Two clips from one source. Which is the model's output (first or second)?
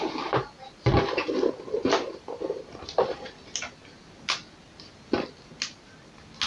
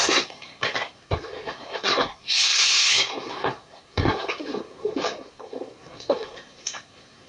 second